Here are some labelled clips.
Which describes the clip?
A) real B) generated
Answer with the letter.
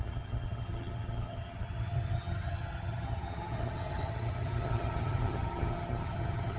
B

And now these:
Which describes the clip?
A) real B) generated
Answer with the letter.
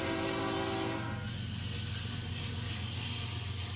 A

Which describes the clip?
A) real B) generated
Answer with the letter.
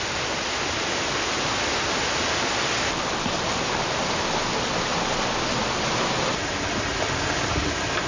A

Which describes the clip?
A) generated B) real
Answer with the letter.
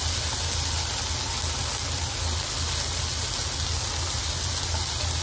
B